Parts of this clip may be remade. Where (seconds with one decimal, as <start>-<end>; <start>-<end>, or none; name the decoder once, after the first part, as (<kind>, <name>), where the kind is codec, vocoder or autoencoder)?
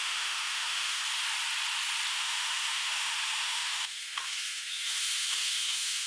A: 0.0-1.0 (autoencoder, DAC-VAE); 2.1-6.1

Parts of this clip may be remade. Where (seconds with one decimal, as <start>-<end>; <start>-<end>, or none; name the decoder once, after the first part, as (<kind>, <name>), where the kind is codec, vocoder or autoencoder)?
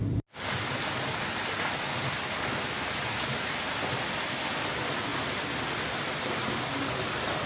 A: none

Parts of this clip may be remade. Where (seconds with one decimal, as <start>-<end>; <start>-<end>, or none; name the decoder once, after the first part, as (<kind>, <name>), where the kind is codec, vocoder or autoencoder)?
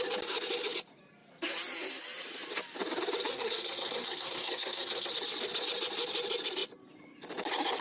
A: 3.3-5.1 (codec, SNAC)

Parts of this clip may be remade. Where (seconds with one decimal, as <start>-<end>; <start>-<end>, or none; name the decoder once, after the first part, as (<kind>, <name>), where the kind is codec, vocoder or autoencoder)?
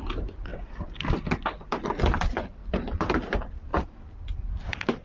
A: 2.6-3.2 (vocoder, BigVGAN v2)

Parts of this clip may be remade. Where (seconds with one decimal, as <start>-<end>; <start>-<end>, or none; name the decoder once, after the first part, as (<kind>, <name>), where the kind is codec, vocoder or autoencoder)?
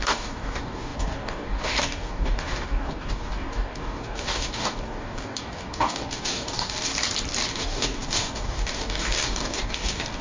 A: 0.0-6.9 (codec, DAC); 7.5-10.2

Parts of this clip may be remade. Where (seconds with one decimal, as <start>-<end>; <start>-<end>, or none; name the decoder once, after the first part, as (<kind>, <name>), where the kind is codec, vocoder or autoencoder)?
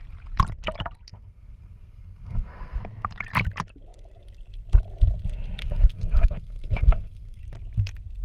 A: 1.1-2.8 (codec, SNAC); 5.6-7.4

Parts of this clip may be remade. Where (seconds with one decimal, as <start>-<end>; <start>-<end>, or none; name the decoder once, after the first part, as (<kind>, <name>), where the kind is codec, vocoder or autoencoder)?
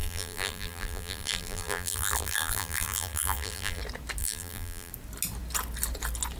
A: 0.0-3.8 (vocoder, BigVGAN v2); 4.2-4.9